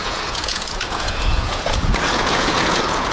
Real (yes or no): no